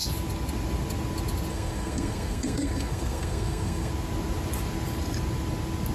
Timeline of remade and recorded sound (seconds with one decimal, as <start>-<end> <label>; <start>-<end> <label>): 0.0-1.5 recorded; 1.5-3.9 remade; 3.9-5.9 recorded